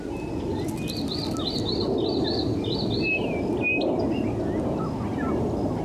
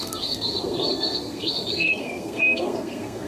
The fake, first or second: second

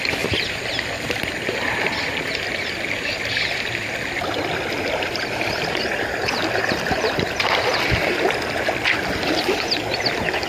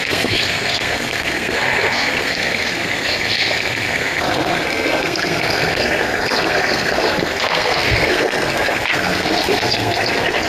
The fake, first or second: second